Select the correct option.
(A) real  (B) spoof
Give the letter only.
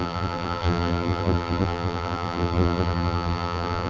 B